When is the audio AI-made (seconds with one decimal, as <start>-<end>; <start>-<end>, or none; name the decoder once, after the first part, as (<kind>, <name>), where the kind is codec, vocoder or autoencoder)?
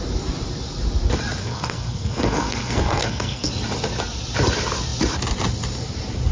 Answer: 1.4-3.5 (codec, SNAC)